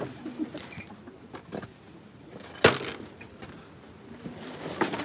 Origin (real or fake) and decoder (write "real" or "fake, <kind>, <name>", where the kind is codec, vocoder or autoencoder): real